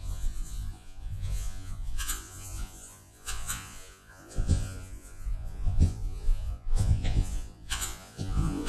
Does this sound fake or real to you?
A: fake